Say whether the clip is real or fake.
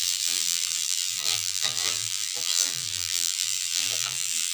fake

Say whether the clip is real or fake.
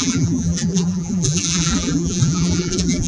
fake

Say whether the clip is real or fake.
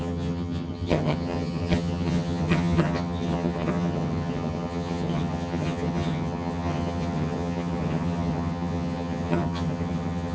fake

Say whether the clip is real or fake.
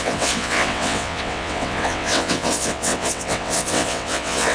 fake